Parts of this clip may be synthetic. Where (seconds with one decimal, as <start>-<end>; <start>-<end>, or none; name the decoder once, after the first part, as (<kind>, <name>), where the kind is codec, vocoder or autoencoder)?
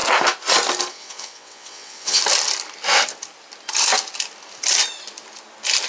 0.9-2.2 (vocoder, WaveNeXt)